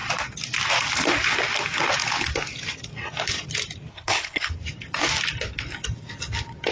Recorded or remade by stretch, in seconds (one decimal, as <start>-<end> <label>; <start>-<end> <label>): 0.0-3.9 recorded; 3.9-4.5 remade; 4.5-6.7 recorded

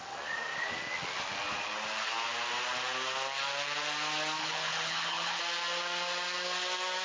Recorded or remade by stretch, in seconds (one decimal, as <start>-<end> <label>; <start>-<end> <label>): 0.0-4.4 recorded; 4.4-5.4 remade; 5.4-7.0 recorded

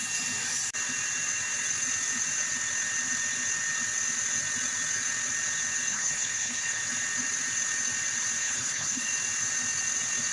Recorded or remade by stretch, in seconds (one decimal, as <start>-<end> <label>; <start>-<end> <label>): 0.0-5.9 recorded; 5.9-6.8 remade; 6.8-8.4 recorded; 8.4-9.1 remade; 9.1-10.3 recorded

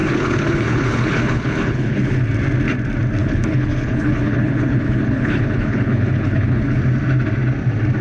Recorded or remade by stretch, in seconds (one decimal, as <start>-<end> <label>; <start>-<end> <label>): 0.0-2.2 remade; 2.2-3.2 recorded; 3.2-6.8 remade; 6.8-8.0 recorded

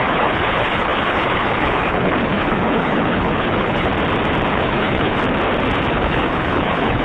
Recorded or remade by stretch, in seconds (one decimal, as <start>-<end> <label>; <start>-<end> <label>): 0.0-3.9 remade; 3.9-4.5 recorded; 4.5-5.2 remade; 5.2-5.9 recorded; 5.9-7.0 remade

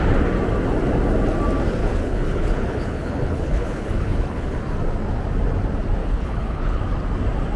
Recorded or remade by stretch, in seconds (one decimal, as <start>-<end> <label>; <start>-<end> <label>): 0.0-1.8 recorded; 1.8-4.6 remade; 4.6-6.0 recorded; 6.0-6.8 remade; 6.8-7.6 recorded

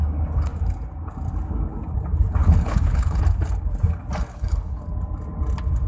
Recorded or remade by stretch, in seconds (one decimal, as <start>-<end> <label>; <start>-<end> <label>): 0.0-2.4 recorded; 2.4-3.2 remade; 3.2-4.3 recorded; 4.3-4.8 remade; 4.8-5.9 recorded

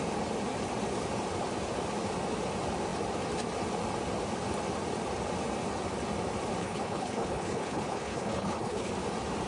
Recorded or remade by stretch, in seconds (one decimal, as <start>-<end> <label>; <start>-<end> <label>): 0.0-6.6 recorded; 6.6-8.9 remade; 8.9-9.5 recorded